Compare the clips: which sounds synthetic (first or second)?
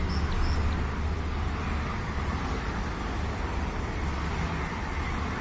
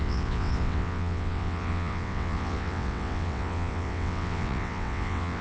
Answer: second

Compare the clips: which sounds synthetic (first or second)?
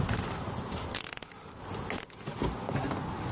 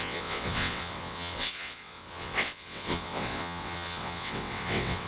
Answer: second